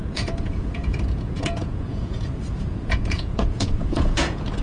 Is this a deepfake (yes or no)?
yes